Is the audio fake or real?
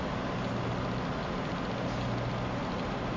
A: real